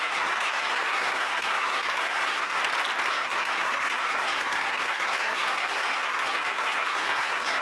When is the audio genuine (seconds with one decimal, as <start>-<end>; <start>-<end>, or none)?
2.6-3.1